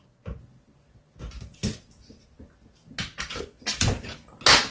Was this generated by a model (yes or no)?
no